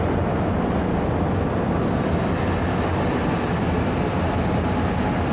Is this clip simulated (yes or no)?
no